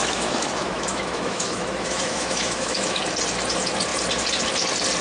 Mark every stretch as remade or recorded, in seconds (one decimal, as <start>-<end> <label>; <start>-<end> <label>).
0.0-3.0 remade; 3.0-5.0 recorded